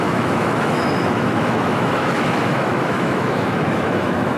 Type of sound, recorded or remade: remade